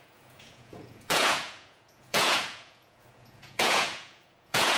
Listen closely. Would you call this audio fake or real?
fake